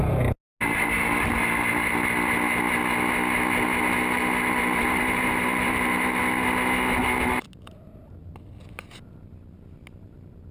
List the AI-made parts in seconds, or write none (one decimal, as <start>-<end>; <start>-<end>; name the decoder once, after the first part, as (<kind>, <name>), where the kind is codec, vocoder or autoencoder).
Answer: 4.6-6.2 (vocoder, BigVGAN v2)